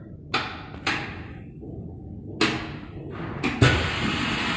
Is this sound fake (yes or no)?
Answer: no